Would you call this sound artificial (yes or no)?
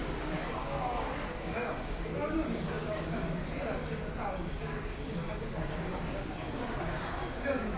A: yes